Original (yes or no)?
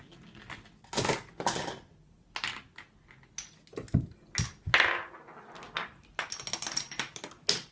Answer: yes